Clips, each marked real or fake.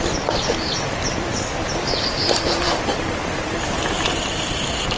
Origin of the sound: real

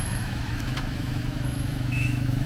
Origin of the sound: fake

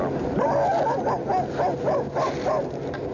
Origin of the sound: real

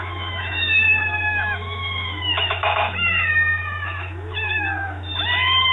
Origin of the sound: fake